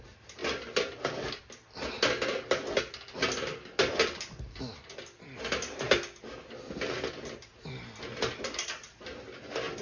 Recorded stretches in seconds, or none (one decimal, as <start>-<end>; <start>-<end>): 0.0-9.8